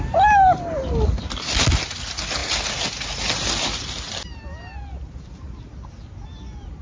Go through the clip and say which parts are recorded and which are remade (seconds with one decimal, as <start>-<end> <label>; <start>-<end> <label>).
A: 0.0-6.8 recorded